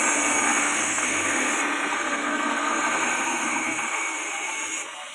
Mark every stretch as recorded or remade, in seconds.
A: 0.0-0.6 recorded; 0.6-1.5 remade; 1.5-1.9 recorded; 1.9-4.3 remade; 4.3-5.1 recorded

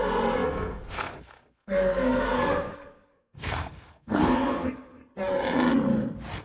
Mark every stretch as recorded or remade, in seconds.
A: 0.0-5.0 remade; 5.0-6.4 recorded